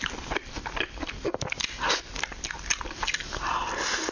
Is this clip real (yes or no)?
yes